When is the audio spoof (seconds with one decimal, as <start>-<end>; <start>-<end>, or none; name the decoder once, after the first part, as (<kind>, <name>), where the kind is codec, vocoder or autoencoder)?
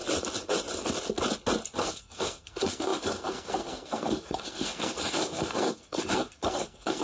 1.8-7.0 (codec, SNAC)